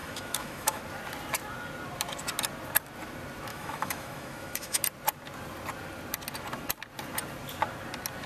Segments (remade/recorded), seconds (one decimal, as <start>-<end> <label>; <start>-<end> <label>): 0.0-0.8 remade; 0.8-3.5 recorded; 3.5-4.8 remade; 4.8-8.3 recorded